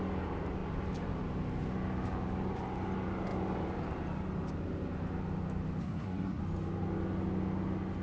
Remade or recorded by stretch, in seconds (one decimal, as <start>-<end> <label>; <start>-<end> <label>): 0.0-5.8 recorded; 5.8-6.4 remade; 6.4-8.0 recorded